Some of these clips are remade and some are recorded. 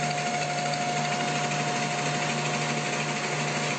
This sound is recorded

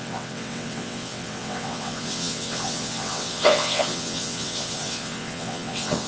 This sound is remade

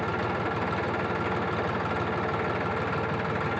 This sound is recorded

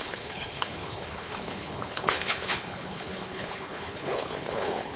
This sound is remade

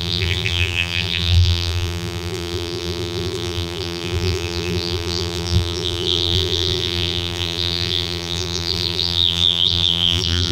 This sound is remade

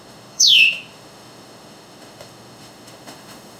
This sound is remade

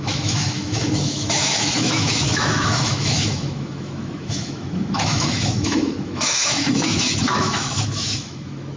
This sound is remade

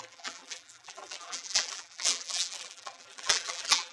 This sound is remade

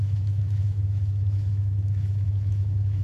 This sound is remade